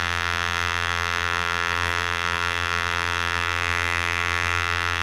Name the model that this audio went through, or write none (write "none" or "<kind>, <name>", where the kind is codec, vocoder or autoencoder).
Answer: vocoder, BigVGAN v2